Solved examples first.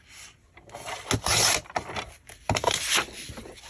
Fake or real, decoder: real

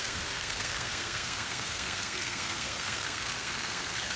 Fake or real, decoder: fake, codec, SNAC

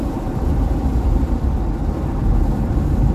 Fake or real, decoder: fake, vocoder, BigVGAN v2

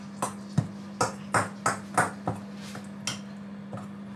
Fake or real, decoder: real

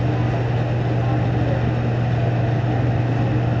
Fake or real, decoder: real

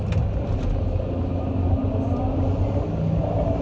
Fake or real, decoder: real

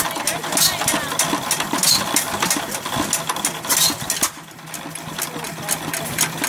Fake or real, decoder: real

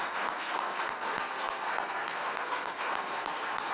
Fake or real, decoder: fake, codec, SNAC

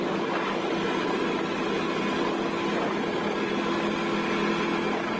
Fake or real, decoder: real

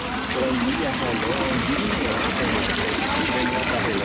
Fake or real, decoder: real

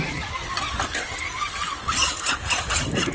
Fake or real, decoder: real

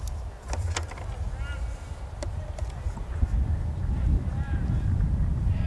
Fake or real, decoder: real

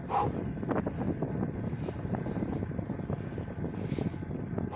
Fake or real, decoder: real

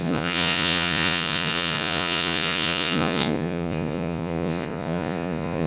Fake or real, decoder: fake, vocoder, Vocos